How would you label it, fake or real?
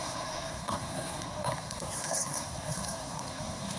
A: fake